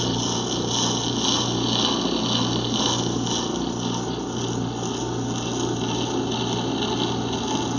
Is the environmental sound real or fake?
real